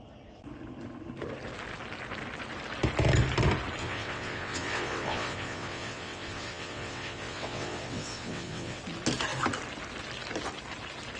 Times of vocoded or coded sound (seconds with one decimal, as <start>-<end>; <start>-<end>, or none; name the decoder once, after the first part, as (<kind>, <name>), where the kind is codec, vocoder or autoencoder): 3.8-8.8 (vocoder, WaveNeXt)